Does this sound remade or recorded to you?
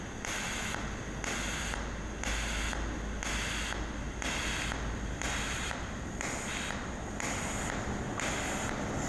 recorded